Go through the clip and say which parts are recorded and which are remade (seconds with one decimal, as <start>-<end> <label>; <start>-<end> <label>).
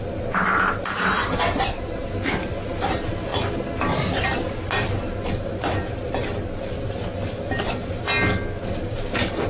0.0-9.5 recorded